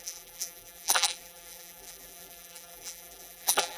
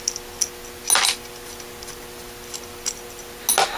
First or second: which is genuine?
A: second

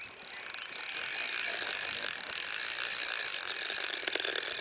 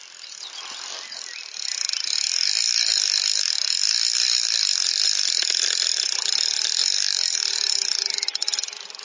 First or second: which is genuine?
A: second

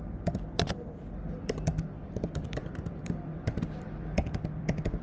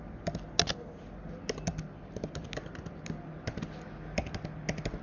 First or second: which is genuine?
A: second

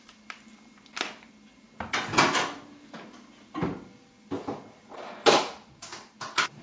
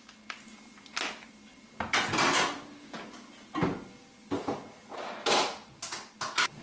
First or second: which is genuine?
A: second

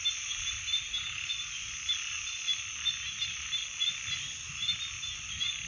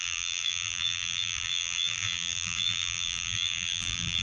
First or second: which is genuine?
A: first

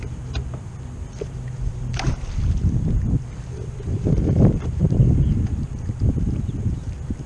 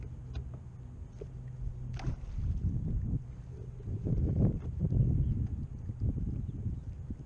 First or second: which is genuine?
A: second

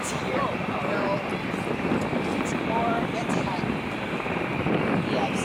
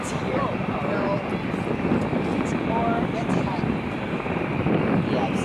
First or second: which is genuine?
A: second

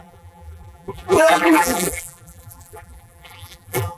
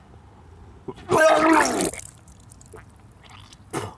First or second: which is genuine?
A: second